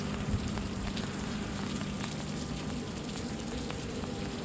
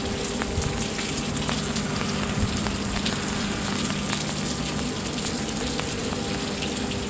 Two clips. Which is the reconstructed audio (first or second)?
first